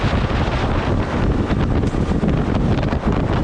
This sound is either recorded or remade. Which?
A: recorded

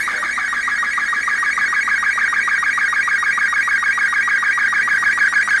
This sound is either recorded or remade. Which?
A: recorded